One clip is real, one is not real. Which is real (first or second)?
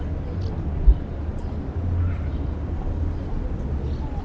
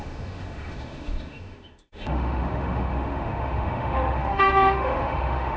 first